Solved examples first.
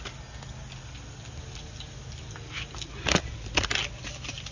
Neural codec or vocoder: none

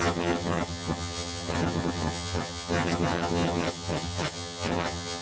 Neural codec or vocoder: vocoder, HiFi-GAN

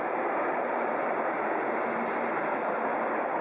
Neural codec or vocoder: none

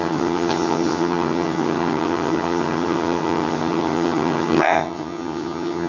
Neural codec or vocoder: vocoder, HiFi-GAN